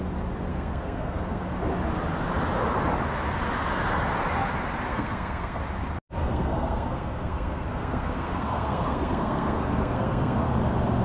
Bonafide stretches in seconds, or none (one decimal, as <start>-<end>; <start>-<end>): 0.0-0.5; 1.4-4.9; 5.6-6.2; 10.5-11.0